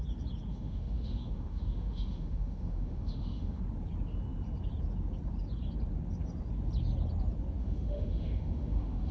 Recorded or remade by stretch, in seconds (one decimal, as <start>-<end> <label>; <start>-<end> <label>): 0.0-0.5 recorded; 0.5-3.6 remade; 3.6-7.6 recorded; 7.6-9.1 remade